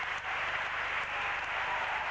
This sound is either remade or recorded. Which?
recorded